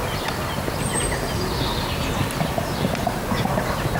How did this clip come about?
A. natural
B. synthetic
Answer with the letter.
A